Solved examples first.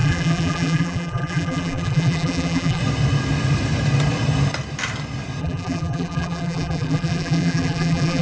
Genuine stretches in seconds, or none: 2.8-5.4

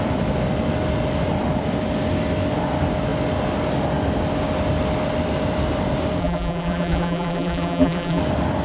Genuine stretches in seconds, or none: 0.0-6.2; 8.2-8.6

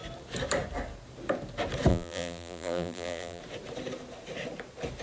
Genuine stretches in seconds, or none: 0.0-1.9; 3.4-5.0

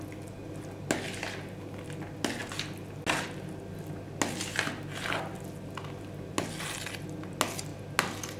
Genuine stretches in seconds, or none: 0.0-8.4

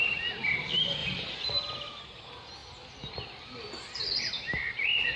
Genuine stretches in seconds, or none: 0.0-1.0; 1.5-2.6